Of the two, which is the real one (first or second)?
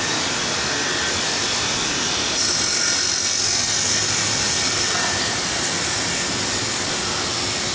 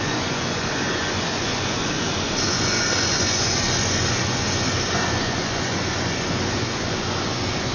first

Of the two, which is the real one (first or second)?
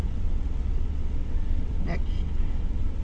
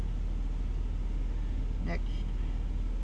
second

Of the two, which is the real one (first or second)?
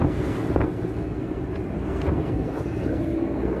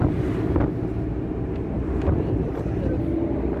second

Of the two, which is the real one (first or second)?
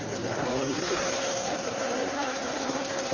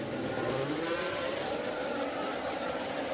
second